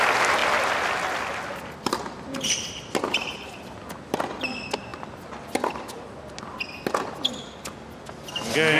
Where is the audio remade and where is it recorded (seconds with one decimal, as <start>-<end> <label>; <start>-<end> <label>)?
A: 0.0-8.8 recorded